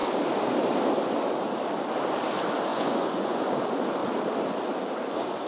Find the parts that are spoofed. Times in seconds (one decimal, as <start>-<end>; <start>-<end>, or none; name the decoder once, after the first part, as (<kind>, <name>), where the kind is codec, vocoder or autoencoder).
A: 2.7-3.4 (vocoder, Vocos)